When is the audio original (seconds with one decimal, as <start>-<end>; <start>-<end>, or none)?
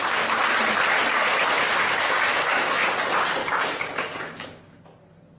0.0-1.1; 2.8-3.4; 4.7-5.4